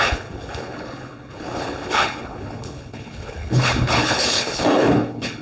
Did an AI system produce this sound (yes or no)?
yes